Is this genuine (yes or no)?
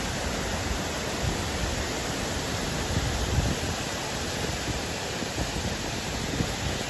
yes